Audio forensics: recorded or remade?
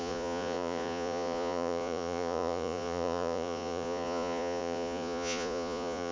remade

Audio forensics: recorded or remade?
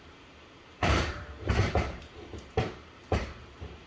remade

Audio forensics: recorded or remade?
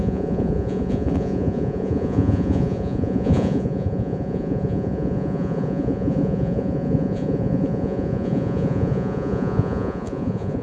remade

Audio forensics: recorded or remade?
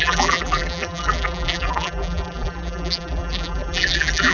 remade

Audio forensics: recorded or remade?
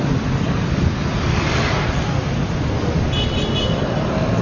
recorded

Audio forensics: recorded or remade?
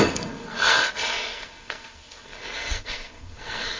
remade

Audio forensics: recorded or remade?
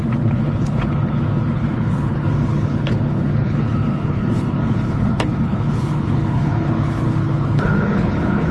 remade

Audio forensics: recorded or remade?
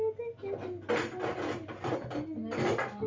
recorded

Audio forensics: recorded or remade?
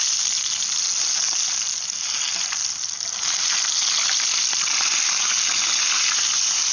recorded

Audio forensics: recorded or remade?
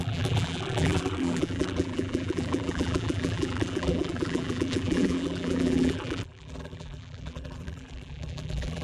remade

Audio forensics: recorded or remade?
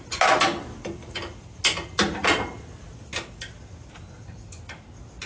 recorded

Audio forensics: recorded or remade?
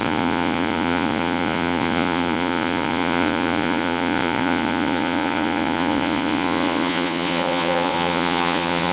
remade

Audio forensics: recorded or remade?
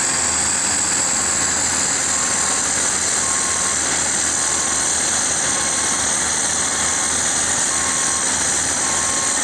recorded